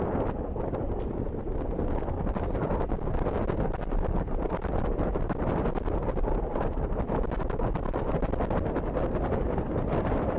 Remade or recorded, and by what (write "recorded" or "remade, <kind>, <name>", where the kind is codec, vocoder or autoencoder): recorded